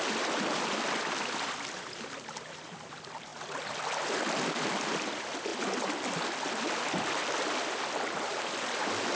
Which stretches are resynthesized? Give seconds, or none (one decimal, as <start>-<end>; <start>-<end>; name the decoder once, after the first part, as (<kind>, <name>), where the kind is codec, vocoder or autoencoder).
0.0-3.3 (vocoder, BigVGAN v2); 4.7-5.5; 6.8-9.2